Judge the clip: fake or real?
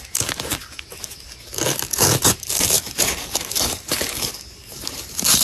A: fake